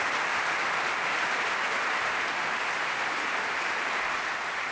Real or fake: real